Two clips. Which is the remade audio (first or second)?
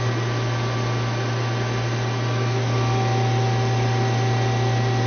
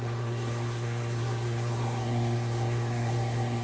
second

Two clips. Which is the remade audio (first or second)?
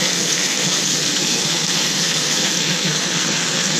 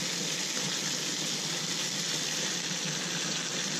first